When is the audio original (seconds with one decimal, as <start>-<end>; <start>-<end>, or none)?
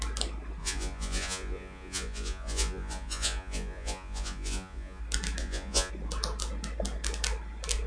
0.0-0.6; 5.0-5.4; 5.9-7.9